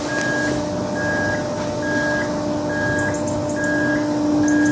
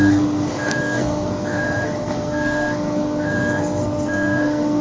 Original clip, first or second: first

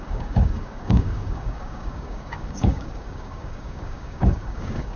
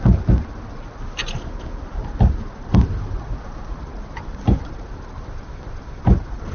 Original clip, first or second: second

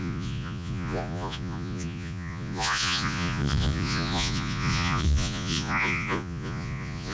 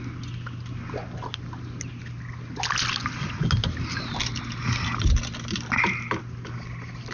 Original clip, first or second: second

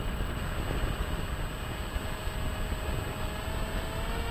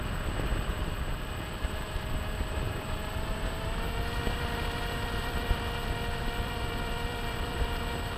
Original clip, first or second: first